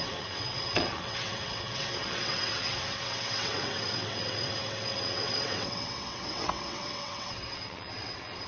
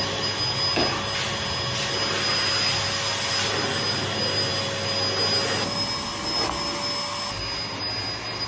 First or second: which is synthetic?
first